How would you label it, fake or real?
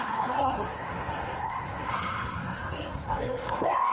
fake